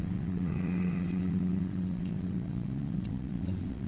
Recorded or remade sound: remade